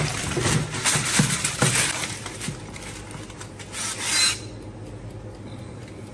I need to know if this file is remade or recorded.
recorded